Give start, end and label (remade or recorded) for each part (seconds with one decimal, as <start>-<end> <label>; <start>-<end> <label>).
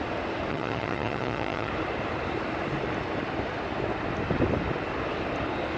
0.0-0.5 recorded; 0.5-1.7 remade; 1.7-5.8 recorded